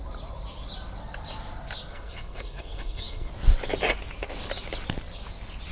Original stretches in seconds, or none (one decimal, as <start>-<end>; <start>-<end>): 0.0-1.9; 3.3-5.7